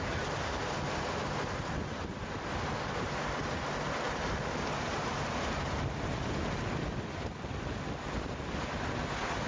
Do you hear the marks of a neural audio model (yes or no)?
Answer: no